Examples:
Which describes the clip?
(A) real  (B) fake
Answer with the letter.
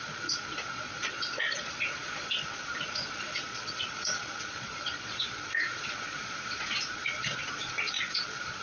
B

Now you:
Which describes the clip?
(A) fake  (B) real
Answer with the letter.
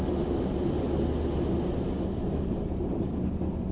B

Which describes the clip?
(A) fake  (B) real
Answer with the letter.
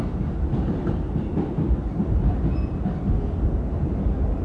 B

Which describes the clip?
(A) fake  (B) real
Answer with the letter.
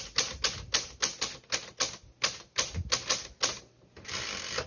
B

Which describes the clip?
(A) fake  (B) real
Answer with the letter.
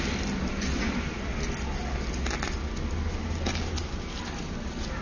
B